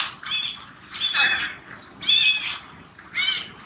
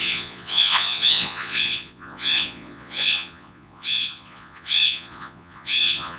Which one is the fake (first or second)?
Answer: second